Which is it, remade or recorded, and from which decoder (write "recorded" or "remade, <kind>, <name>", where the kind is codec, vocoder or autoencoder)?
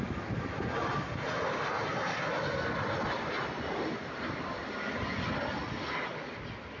recorded